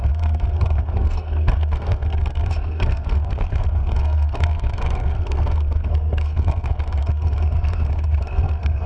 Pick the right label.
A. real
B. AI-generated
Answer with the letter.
B